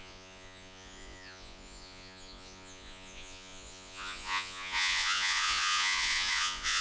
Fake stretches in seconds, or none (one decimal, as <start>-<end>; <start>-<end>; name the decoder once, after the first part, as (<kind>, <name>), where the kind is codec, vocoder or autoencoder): 0.0-6.8 (vocoder, Vocos)